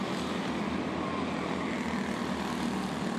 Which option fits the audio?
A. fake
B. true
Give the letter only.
B